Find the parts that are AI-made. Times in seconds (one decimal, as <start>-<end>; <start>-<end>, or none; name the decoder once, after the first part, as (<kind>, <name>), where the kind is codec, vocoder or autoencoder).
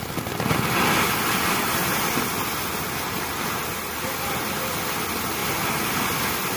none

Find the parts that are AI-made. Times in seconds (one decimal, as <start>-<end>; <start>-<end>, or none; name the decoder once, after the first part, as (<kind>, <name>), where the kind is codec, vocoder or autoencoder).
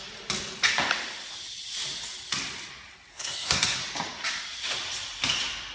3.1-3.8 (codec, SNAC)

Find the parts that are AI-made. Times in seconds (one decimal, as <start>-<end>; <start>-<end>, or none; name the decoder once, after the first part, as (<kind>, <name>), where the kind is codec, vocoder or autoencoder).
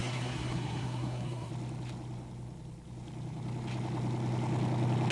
0.0-1.5 (codec, SNAC)